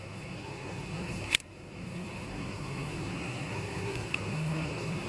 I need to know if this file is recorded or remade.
remade